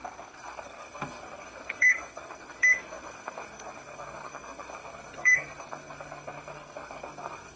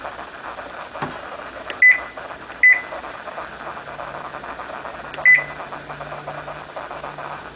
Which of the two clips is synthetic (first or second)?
first